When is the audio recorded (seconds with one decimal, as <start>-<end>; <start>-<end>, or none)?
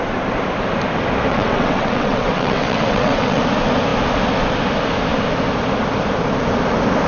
0.0-1.3; 3.4-7.1